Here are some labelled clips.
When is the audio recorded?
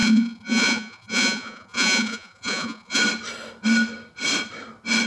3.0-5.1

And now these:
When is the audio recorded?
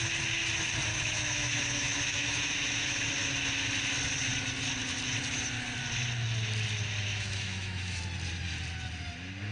0.0-0.9; 3.1-7.1; 8.0-9.5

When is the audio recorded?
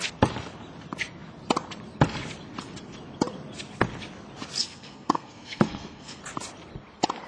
0.0-4.6; 6.2-7.3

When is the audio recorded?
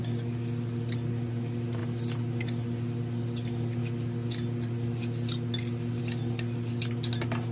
0.0-7.5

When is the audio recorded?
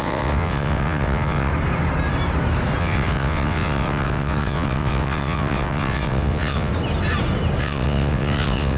1.5-2.8; 6.7-7.6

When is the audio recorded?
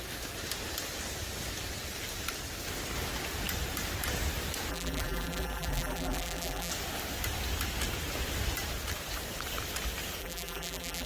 0.0-4.7; 6.7-10.2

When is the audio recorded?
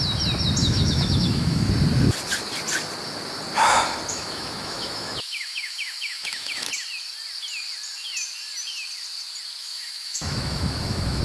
0.0-0.6; 1.7-4.1; 6.7-9.6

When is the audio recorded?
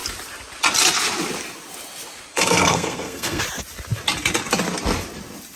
0.0-2.3; 3.4-5.6